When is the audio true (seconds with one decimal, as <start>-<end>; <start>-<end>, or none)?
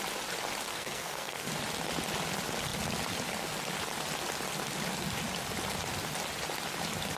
0.0-0.7; 1.5-7.2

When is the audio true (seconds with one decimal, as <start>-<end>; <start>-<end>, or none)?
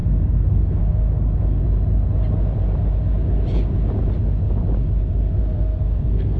1.6-5.4